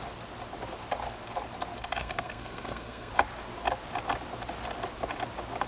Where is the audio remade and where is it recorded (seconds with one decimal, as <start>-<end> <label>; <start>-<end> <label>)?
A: 0.0-2.0 recorded; 2.0-3.1 remade; 3.1-5.7 recorded